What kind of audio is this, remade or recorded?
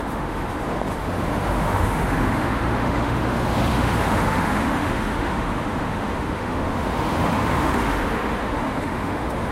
remade